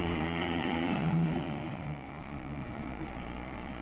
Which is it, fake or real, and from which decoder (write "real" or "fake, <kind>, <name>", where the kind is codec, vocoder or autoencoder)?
fake, vocoder, Vocos